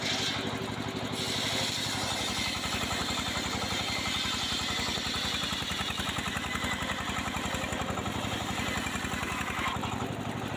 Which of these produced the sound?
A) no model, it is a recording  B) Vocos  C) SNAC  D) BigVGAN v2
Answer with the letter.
A